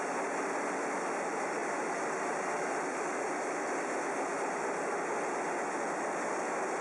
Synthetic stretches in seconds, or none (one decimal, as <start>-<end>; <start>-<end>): none